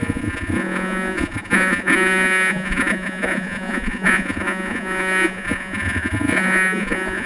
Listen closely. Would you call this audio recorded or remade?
remade